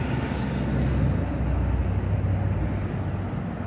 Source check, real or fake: real